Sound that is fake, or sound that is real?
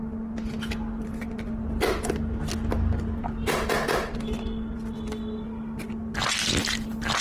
real